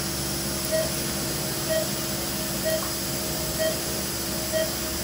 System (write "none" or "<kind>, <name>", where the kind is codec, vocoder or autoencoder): none